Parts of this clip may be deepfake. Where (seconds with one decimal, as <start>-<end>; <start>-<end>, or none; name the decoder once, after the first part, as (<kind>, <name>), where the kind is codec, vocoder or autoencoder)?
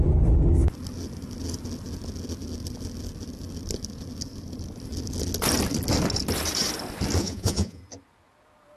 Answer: 7.2-7.8 (vocoder, Vocos)